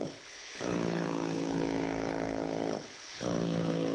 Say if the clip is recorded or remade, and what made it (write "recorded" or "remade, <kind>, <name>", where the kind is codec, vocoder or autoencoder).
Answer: remade, codec, HILCodec